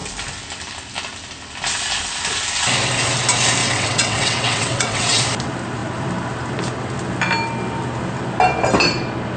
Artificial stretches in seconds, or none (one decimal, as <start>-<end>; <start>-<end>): 3.6-5.2